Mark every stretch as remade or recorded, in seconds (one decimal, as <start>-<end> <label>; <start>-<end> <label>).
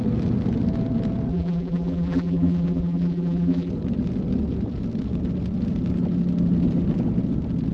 0.0-1.3 recorded; 1.3-3.7 remade; 3.7-7.7 recorded